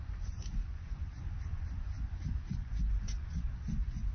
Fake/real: fake